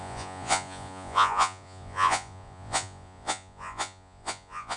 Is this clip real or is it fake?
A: fake